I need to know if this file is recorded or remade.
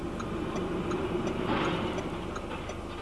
recorded